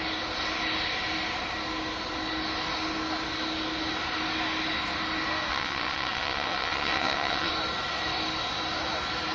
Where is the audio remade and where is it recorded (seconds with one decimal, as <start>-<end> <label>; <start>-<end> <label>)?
0.0-5.5 recorded; 5.5-7.5 remade; 7.5-9.3 recorded